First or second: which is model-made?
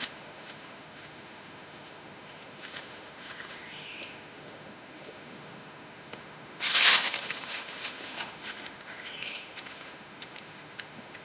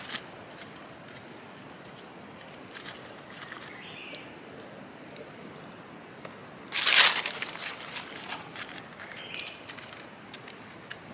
first